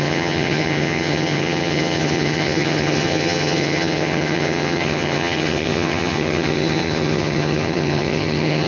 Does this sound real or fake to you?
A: fake